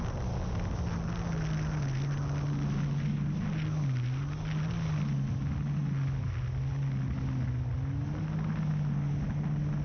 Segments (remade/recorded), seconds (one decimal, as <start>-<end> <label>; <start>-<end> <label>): 0.0-9.8 recorded